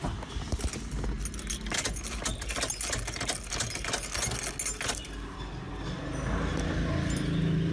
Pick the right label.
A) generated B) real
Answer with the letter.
B